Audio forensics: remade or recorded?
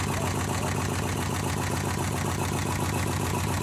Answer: recorded